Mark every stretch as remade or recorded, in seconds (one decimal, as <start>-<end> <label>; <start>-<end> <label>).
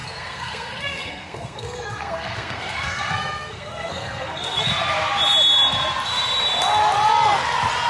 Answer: 0.0-4.7 remade; 4.7-7.9 recorded